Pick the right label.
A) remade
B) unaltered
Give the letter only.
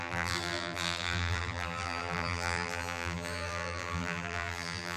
A